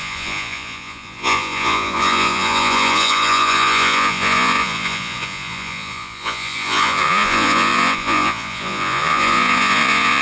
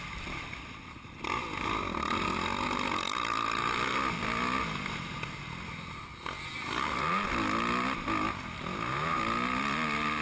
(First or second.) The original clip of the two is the second